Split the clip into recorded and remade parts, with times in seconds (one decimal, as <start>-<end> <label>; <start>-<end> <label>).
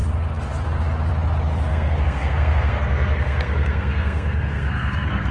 0.0-1.7 recorded; 1.7-5.3 remade